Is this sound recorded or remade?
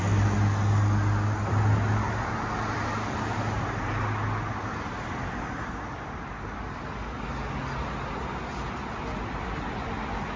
recorded